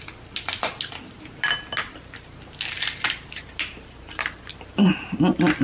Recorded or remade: recorded